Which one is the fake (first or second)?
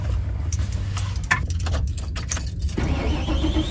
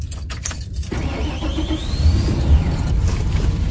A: second